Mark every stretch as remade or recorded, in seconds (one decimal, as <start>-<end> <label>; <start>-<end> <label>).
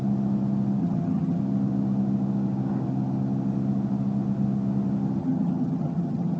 0.0-0.8 recorded; 0.8-1.4 remade; 1.4-5.2 recorded; 5.2-6.4 remade